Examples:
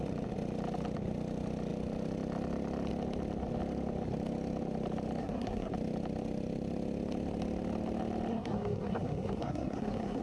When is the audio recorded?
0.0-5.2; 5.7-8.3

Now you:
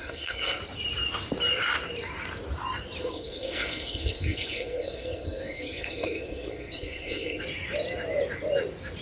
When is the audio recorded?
0.6-3.0; 7.4-9.0

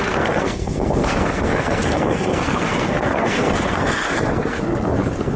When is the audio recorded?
none

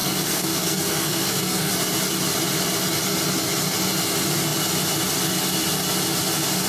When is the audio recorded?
1.7-6.7

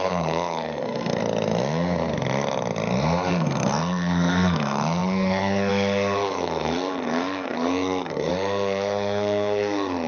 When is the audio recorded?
1.2-3.3

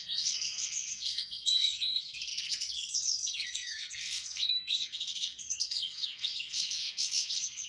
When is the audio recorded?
none

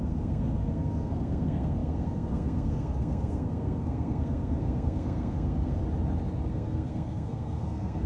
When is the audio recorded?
5.8-6.5